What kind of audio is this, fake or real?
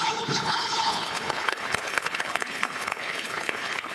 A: fake